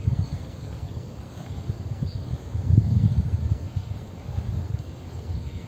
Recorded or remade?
remade